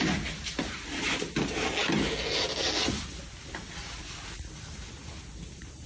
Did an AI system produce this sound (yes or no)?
no